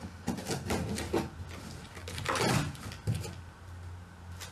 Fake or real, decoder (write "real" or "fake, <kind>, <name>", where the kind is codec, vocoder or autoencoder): real